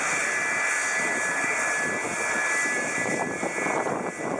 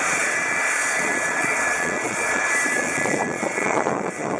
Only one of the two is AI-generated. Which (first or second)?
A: second